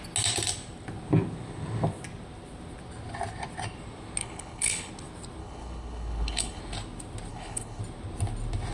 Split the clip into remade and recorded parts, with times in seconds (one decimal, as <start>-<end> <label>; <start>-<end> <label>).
0.0-4.2 recorded; 4.2-4.9 remade; 4.9-5.4 recorded; 5.4-6.6 remade; 6.6-7.3 recorded; 7.3-7.8 remade; 7.8-8.7 recorded